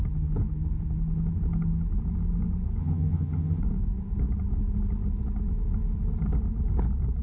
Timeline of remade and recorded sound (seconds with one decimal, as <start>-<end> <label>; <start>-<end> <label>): 0.0-2.8 recorded; 2.8-3.6 remade; 3.6-7.2 recorded